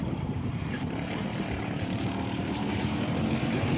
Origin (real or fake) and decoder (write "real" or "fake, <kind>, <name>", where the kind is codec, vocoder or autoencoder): fake, vocoder, BigVGAN v2